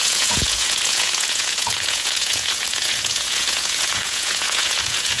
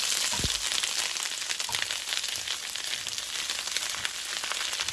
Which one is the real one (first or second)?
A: second